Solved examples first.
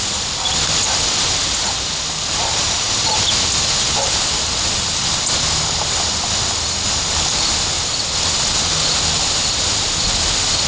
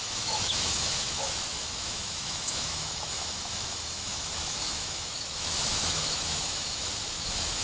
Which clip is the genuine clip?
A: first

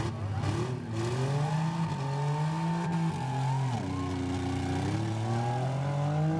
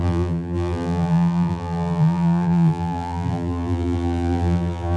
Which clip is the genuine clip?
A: first